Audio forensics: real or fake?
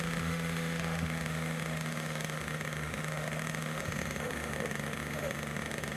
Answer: fake